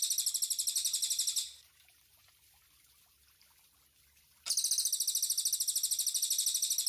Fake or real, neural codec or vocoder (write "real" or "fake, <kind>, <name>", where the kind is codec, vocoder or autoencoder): real